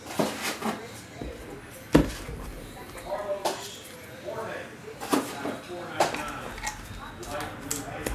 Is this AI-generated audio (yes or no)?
no